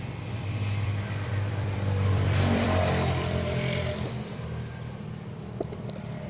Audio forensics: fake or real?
fake